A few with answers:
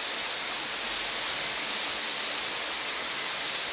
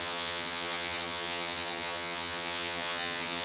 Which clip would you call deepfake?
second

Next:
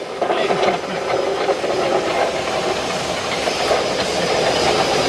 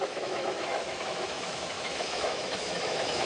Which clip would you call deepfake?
second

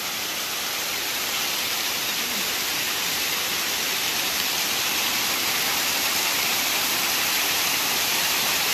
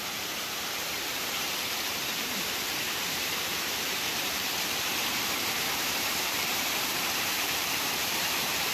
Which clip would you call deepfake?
second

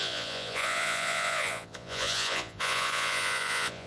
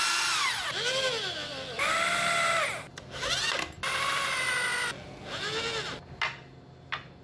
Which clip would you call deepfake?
first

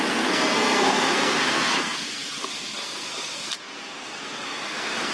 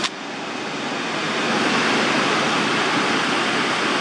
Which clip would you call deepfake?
first